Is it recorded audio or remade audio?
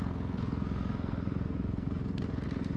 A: remade